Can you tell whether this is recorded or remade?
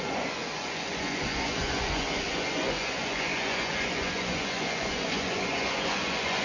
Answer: remade